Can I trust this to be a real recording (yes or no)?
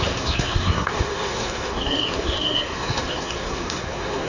no